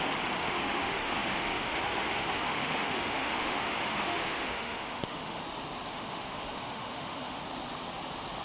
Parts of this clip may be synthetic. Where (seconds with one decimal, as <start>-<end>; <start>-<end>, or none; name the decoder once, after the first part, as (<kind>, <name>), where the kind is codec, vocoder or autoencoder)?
0.4-5.4 (autoencoder, DAC-VAE); 5.9-7.4